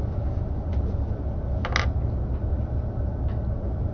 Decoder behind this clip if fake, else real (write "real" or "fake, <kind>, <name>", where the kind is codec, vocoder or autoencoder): real